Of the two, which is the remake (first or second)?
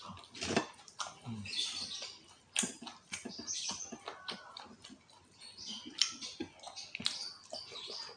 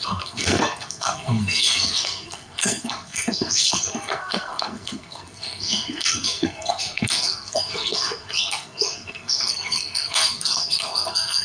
second